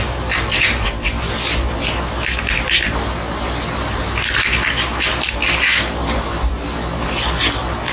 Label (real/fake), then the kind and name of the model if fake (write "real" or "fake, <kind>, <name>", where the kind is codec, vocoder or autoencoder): real